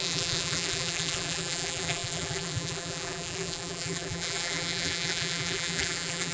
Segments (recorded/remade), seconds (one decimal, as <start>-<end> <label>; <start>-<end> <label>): 0.0-6.3 remade